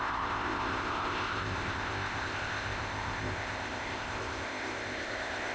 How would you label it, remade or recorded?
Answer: remade